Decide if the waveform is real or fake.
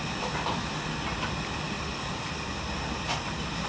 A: real